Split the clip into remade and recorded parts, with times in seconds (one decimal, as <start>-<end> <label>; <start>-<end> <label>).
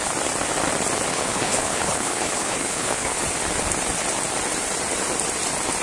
0.0-1.1 recorded; 1.1-3.2 remade; 3.2-5.8 recorded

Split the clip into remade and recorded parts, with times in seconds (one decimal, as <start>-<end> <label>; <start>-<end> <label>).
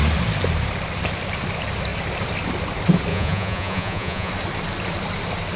0.0-3.1 recorded; 3.1-4.3 remade; 4.3-5.6 recorded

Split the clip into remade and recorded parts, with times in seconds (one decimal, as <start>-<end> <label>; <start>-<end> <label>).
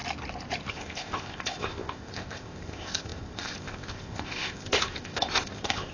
0.0-0.7 recorded; 0.7-5.9 remade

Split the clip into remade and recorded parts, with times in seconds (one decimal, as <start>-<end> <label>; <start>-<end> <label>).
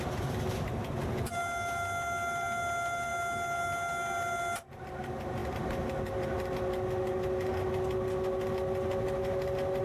0.0-9.8 recorded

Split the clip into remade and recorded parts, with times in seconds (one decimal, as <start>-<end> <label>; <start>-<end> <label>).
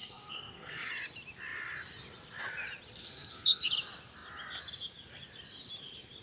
0.0-0.9 remade; 0.9-3.0 recorded; 3.0-3.7 remade; 3.7-6.2 recorded